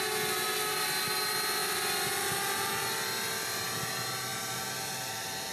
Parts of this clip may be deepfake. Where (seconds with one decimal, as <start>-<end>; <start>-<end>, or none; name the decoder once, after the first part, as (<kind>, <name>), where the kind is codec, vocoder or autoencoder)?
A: none